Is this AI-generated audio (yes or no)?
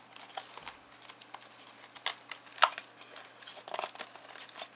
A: no